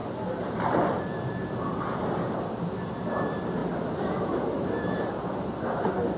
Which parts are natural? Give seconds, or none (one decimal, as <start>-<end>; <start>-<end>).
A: 2.7-3.6; 4.2-6.2